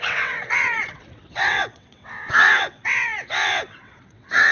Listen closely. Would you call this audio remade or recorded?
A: remade